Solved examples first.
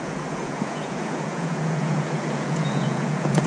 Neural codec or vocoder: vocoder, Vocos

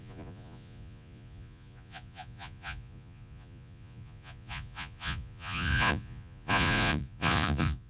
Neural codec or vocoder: vocoder, Vocos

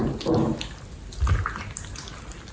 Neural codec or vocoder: none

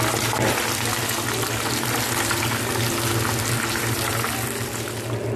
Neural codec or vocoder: none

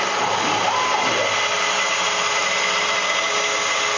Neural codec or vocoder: none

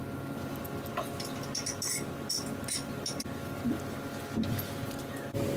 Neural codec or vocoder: none